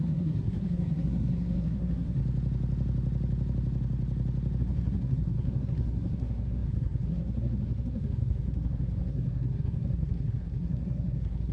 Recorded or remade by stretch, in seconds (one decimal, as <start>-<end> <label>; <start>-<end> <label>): 0.0-2.2 remade; 2.2-4.6 recorded; 4.6-11.5 remade